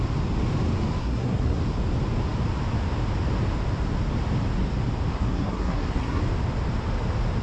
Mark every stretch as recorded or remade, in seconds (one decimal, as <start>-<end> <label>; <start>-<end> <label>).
0.0-1.0 recorded; 1.0-1.6 remade; 1.6-5.1 recorded; 5.1-6.2 remade; 6.2-7.4 recorded